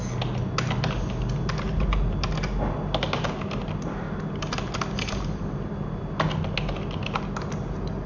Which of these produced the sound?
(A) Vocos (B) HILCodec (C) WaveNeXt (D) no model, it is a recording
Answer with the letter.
D